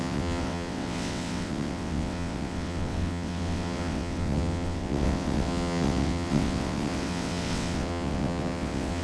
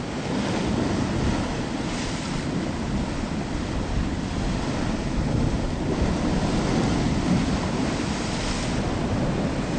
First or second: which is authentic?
second